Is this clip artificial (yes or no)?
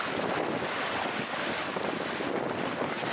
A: no